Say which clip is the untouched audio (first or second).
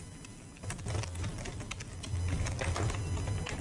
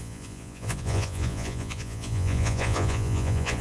first